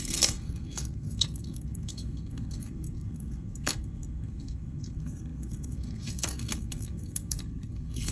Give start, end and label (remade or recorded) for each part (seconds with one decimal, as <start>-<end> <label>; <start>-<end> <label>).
0.0-8.1 remade